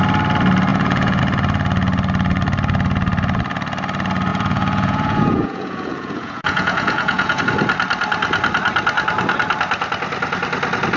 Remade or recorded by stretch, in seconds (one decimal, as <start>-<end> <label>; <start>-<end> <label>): 0.0-0.7 recorded; 0.7-1.2 remade; 1.2-4.3 recorded; 4.3-7.4 remade; 7.4-11.0 recorded